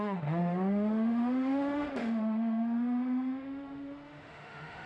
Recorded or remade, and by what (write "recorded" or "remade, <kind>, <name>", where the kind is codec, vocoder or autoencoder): remade, autoencoder, DAC-VAE